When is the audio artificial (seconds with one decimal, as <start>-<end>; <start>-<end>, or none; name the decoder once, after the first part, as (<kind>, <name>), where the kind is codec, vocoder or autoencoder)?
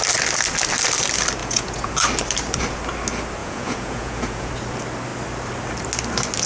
1.4-1.9 (vocoder, Vocos); 3.4-4.5